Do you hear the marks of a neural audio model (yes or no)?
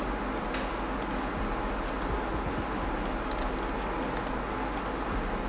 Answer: no